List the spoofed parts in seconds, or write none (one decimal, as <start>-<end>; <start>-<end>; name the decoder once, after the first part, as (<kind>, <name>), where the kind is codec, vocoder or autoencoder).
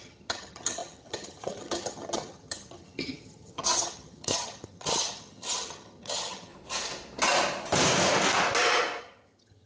0.0-6.5 (vocoder, HiFi-GAN); 9.0-9.7